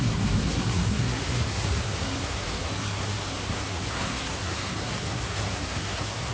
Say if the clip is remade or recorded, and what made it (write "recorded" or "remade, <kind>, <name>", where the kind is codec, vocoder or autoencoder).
remade, codec, SNAC